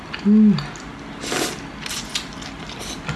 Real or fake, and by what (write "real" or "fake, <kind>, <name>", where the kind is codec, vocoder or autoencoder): real